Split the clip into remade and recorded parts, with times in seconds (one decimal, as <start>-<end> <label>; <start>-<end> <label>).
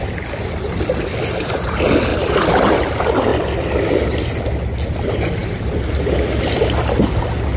0.0-7.6 recorded